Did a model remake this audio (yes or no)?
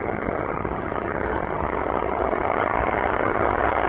yes